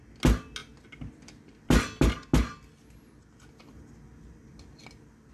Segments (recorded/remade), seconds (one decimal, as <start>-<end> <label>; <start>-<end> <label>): 0.0-5.3 recorded